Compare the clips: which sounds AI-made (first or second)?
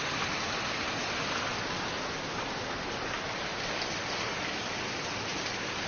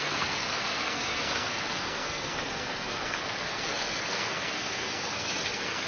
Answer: second